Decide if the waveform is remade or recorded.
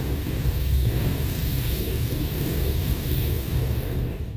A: remade